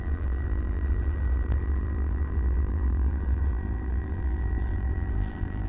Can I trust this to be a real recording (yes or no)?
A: no